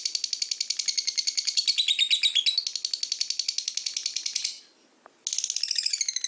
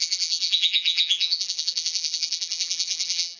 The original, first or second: first